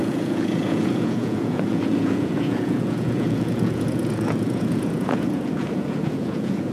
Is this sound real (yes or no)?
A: no